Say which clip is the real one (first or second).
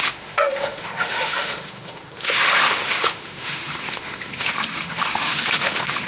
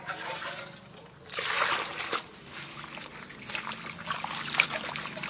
second